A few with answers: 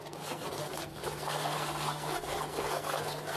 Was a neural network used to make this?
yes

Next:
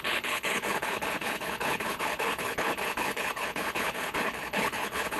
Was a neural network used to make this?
yes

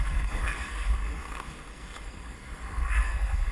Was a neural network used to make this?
yes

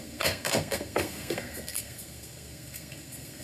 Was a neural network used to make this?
yes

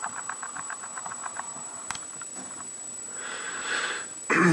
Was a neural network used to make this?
no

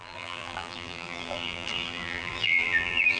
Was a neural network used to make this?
yes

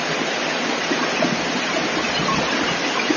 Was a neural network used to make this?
no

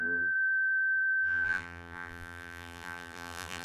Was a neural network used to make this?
yes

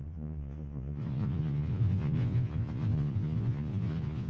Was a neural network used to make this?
yes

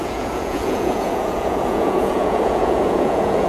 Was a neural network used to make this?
yes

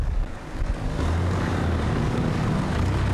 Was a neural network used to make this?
yes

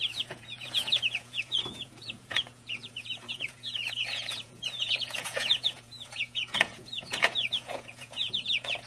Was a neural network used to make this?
yes